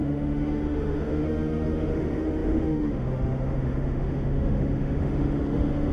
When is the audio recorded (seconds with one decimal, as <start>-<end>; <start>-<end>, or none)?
none